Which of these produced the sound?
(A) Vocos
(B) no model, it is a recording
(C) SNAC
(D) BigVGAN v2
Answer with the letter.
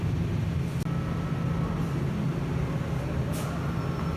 B